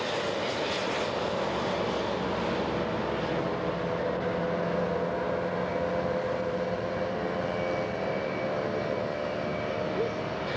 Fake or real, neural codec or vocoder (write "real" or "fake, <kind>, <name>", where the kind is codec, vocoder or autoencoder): real